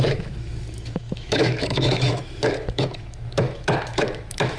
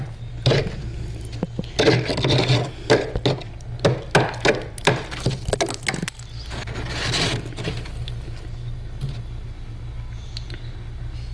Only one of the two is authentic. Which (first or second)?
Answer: second